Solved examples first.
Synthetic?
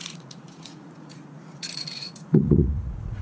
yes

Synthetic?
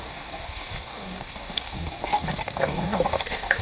yes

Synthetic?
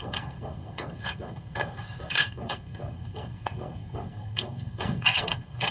yes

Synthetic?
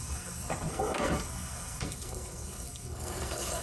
yes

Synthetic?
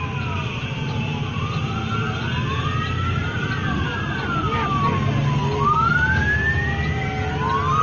no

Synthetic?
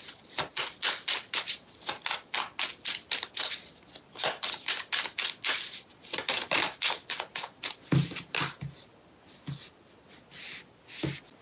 no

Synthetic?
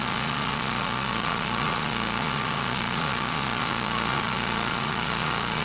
yes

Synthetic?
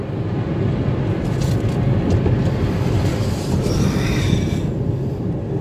no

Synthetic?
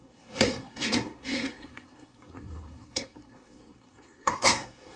yes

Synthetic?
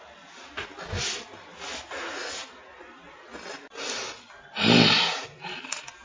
no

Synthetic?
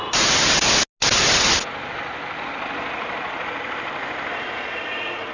no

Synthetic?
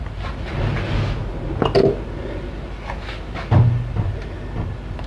no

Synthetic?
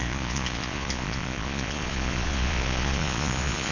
yes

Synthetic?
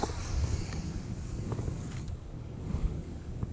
yes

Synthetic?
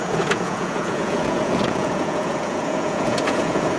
yes